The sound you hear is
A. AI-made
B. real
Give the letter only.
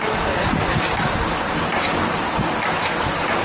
B